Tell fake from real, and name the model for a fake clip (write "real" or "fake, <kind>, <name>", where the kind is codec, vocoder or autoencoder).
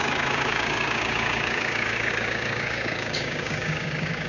fake, codec, DAC